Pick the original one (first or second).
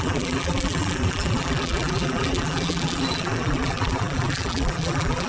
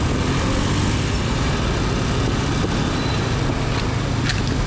second